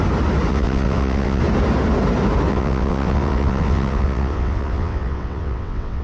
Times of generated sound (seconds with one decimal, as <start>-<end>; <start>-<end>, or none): 0.5-1.4; 2.5-6.0